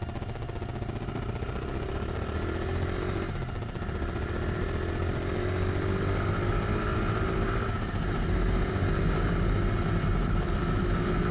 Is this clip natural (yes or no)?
yes